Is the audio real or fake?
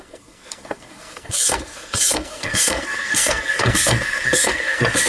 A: fake